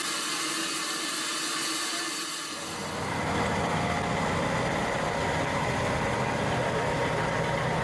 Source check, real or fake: real